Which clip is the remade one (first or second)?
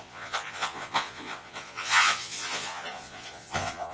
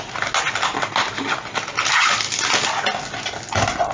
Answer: first